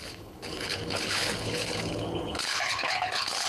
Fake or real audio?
fake